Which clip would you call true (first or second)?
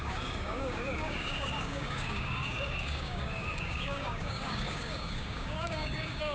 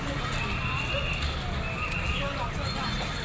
second